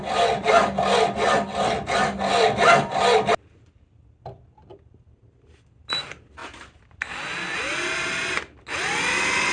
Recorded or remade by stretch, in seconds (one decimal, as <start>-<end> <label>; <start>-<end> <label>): 0.0-9.5 recorded